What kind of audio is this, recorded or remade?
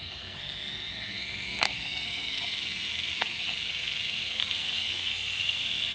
remade